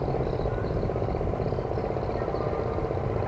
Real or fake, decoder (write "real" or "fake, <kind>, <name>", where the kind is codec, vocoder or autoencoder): real